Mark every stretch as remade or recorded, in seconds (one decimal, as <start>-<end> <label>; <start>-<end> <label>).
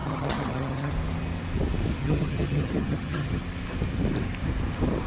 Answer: 0.0-0.9 remade; 0.9-2.0 recorded; 2.0-3.4 remade; 3.4-5.1 recorded